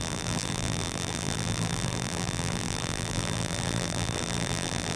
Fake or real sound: fake